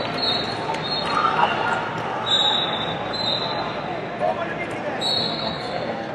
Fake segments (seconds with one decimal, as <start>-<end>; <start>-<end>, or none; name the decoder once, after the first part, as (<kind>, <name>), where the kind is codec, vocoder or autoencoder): 5.2-6.1 (codec, SNAC)